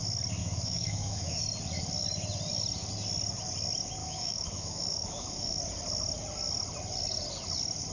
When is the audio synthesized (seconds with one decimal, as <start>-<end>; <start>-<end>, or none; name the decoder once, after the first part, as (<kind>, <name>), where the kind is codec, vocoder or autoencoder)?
0.4-1.4 (autoencoder, DAC-VAE); 4.0-5.6